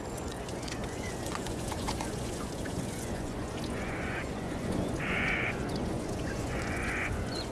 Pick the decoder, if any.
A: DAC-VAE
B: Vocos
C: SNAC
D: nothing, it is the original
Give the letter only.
B